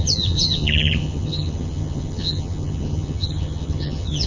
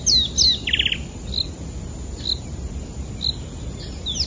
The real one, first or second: second